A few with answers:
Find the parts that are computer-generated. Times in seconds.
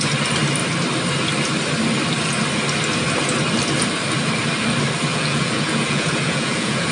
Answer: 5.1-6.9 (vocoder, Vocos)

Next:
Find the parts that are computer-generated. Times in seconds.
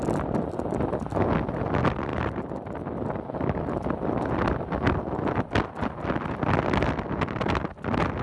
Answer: none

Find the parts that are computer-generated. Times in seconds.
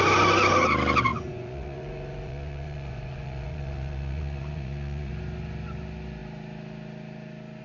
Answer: 1.1-5.1 (vocoder, Vocos)